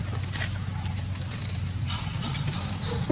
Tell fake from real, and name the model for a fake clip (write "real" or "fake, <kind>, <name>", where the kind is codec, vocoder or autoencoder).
real